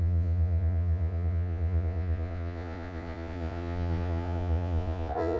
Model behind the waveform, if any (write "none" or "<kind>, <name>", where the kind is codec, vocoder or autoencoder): vocoder, Vocos